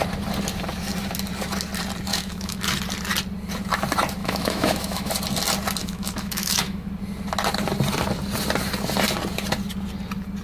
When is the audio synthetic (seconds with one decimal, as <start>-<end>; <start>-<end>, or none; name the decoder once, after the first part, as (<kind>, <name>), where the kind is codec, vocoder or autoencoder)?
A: 2.1-2.6 (autoencoder, DAC-VAE); 4.2-5.1; 5.8-6.9